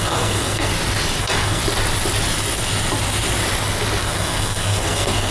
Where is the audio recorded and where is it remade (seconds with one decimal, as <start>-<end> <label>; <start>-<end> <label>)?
0.0-0.7 remade; 0.7-1.2 recorded; 1.2-1.6 remade; 1.6-4.0 recorded; 4.0-5.3 remade